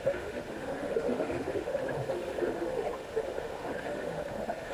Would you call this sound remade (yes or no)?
yes